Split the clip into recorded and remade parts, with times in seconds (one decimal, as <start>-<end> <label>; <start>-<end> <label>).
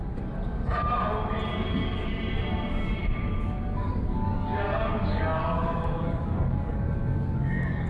0.0-1.5 recorded; 1.5-2.1 remade; 2.1-3.0 recorded; 3.0-7.9 remade